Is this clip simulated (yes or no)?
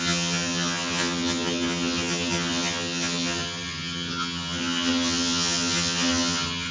yes